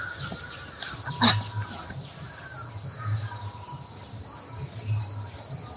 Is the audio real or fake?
real